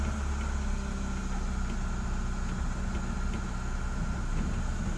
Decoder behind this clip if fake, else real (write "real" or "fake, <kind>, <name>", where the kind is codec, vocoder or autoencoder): real